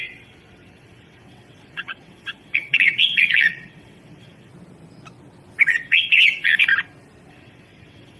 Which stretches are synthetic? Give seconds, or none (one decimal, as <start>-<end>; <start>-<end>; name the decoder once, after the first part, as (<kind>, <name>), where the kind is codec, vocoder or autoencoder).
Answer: 0.0-4.5 (vocoder, WaveNeXt); 5.7-6.7; 7.3-8.2